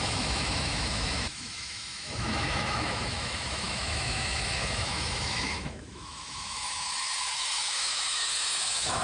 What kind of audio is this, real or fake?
fake